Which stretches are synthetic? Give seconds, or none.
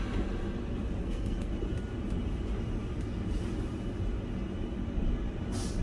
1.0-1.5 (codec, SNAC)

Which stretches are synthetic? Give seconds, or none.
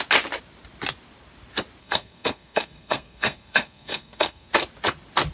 1.8-4.5 (codec, SNAC)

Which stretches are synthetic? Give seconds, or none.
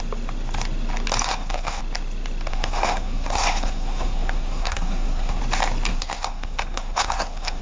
1.3-1.8 (codec, SNAC); 2.5-5.4; 5.9-7.6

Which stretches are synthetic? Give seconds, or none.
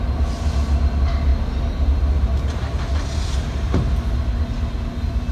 none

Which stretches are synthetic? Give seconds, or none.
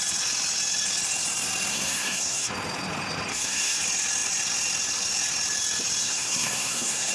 1.7-2.5 (codec, SNAC); 3.3-3.8; 6.0-7.1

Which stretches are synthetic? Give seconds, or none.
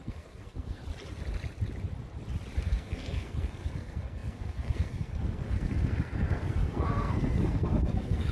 0.0-0.8 (codec, SNAC); 2.6-8.3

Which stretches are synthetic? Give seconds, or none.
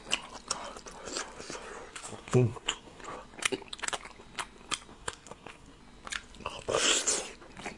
1.9-3.0 (codec, SNAC); 4.9-5.8